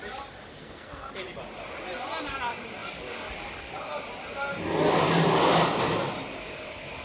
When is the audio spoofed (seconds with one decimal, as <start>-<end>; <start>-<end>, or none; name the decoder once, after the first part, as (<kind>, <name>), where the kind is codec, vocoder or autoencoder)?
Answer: 0.5-1.1 (codec, SNAC)